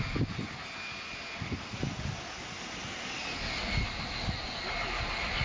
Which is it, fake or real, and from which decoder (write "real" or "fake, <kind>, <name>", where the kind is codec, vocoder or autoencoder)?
real